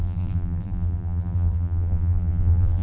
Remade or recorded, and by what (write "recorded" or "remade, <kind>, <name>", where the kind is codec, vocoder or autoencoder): remade, vocoder, BigVGAN v2